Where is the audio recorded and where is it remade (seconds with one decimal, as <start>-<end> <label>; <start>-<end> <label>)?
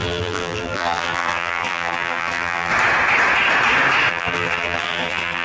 0.0-2.7 remade; 2.7-4.1 recorded; 4.1-5.4 remade